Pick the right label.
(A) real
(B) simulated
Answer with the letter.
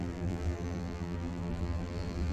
B